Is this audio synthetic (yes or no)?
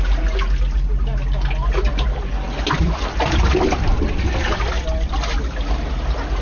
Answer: no